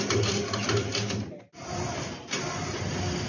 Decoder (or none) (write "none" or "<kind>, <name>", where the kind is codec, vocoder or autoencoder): none